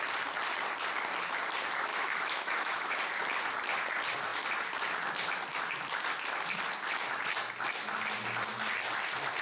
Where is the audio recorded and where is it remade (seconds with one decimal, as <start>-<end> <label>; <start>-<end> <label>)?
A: 0.0-1.9 recorded; 1.9-3.0 remade; 3.0-9.4 recorded

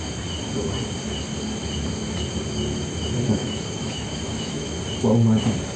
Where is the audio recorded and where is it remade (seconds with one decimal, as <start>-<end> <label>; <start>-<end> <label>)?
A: 0.0-3.4 recorded; 3.4-4.8 remade; 4.8-5.8 recorded